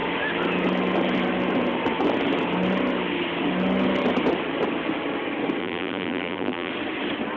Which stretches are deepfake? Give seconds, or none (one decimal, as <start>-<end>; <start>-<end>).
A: 5.6-6.7